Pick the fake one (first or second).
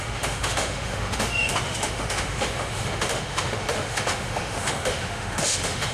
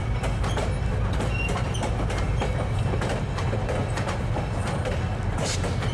first